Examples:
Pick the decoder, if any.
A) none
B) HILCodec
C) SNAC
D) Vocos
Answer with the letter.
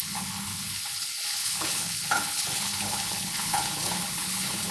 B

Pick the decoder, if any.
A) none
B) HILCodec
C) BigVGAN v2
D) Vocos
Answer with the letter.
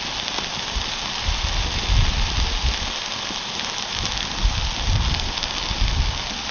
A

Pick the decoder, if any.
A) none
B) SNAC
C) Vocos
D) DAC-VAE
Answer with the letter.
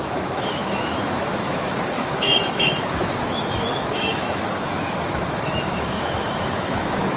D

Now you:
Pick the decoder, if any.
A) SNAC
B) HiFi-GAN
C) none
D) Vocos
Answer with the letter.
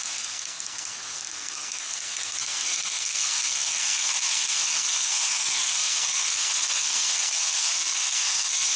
A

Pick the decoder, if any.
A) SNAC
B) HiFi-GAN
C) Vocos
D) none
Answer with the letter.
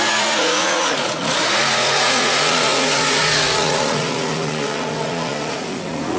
C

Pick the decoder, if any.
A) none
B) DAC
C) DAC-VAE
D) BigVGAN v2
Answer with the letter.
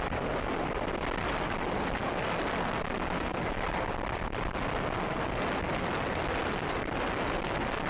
A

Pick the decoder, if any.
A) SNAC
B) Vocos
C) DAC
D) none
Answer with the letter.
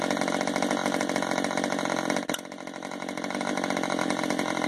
D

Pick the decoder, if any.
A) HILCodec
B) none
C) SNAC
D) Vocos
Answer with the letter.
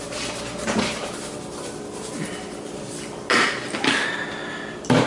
B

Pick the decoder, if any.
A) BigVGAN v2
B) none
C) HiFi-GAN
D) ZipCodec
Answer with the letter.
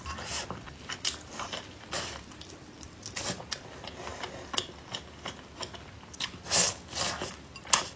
B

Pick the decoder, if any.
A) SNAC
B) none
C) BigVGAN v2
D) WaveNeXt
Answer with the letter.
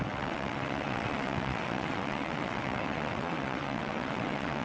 D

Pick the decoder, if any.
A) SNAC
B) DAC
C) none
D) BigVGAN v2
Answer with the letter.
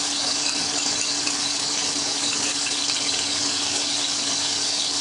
B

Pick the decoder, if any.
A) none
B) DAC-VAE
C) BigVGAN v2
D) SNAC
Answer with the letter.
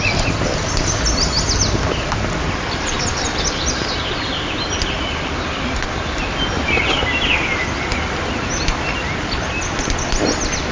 A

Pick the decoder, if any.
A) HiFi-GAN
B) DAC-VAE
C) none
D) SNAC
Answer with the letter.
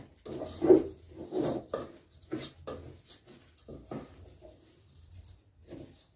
C